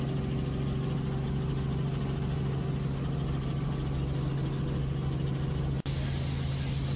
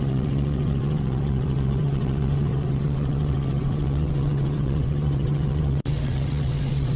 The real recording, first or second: first